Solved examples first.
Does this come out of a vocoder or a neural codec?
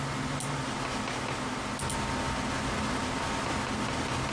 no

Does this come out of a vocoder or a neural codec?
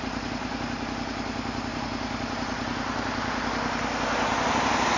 no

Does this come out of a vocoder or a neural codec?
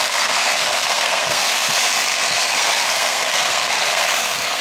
yes